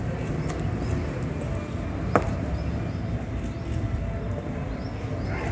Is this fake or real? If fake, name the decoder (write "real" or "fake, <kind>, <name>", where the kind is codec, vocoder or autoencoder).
real